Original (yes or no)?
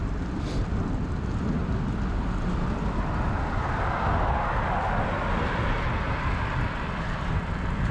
yes